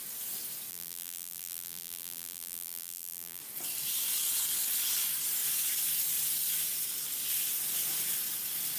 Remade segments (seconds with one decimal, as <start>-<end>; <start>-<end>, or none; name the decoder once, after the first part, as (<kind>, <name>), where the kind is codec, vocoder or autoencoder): 0.7-3.4 (vocoder, BigVGAN v2)